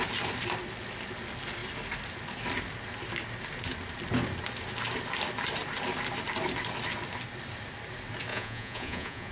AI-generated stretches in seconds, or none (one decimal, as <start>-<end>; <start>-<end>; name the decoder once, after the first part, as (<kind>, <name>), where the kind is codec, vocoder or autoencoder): 8.3-9.3 (vocoder, Vocos)